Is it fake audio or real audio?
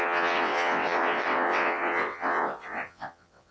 fake